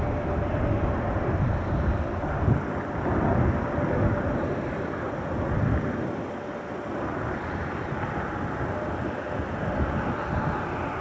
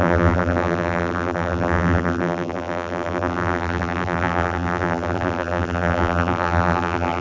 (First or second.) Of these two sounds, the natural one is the first